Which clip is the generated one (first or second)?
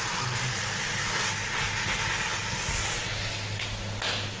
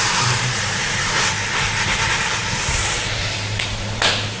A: second